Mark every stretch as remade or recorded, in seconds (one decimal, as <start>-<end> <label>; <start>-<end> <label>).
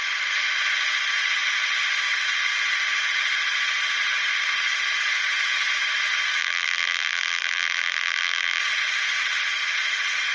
0.0-6.4 recorded; 6.4-8.6 remade; 8.6-10.3 recorded